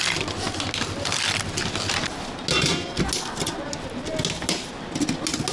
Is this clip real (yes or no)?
yes